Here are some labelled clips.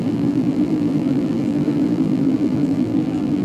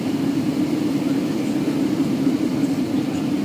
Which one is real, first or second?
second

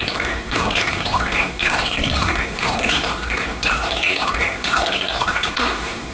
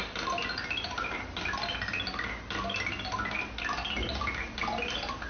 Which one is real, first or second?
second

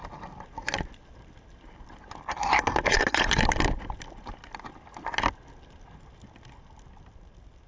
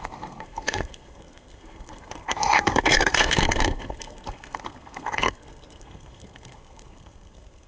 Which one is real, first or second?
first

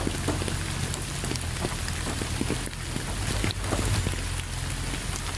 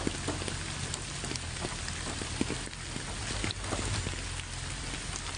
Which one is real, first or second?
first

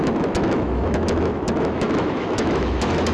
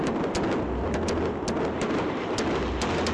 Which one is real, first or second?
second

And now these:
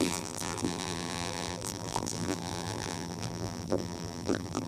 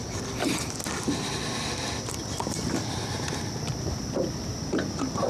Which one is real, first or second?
second